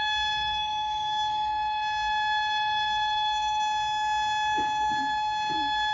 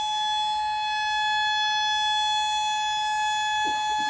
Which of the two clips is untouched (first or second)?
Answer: second